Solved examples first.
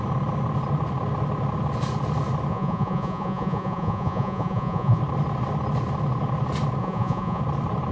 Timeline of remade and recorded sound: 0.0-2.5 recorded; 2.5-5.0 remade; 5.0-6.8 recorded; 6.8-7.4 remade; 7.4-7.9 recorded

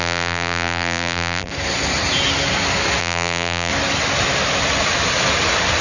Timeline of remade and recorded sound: 0.0-1.5 remade; 1.5-3.0 recorded; 3.0-3.7 remade; 3.7-5.8 recorded

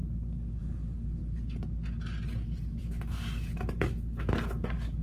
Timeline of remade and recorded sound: 0.0-1.2 remade; 1.2-2.8 recorded; 2.8-5.0 remade

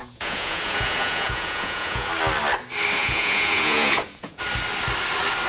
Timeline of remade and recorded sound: 0.0-2.1 remade; 2.1-3.0 recorded; 3.0-4.4 remade; 4.4-5.5 recorded

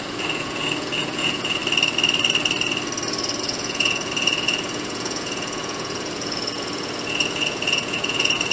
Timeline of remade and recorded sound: 0.0-1.6 remade; 1.6-3.4 recorded; 3.4-8.5 remade

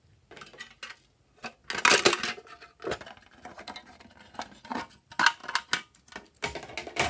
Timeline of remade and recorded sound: 0.0-7.1 recorded

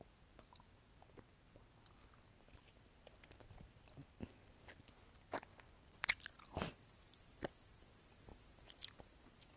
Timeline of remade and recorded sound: 0.0-5.5 recorded; 5.5-6.2 remade; 6.2-9.6 recorded

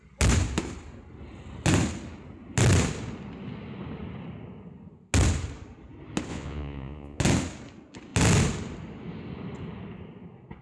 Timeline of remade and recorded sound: 0.0-6.3 recorded; 6.3-7.2 remade; 7.2-10.6 recorded